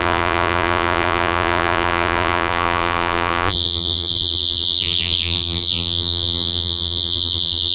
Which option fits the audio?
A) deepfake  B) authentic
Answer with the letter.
A